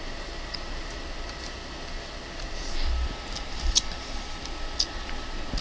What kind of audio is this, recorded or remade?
recorded